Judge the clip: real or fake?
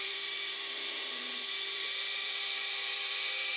fake